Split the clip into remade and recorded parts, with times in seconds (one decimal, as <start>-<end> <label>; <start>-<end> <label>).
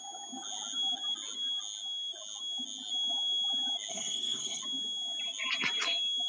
0.0-3.9 recorded; 3.9-4.6 remade; 4.6-6.3 recorded